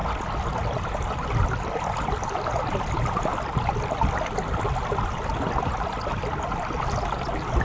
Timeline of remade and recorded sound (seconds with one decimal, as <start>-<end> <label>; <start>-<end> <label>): 0.0-7.6 recorded